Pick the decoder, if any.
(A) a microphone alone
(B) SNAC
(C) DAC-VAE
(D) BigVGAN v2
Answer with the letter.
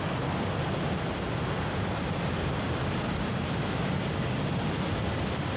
D